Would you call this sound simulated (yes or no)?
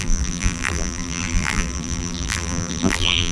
yes